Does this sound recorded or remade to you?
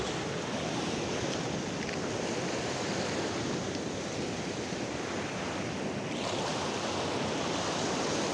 recorded